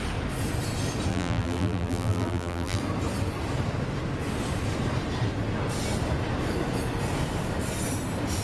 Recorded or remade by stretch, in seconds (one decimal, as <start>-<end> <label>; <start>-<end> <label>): 0.0-1.1 recorded; 1.1-2.8 remade; 2.8-8.4 recorded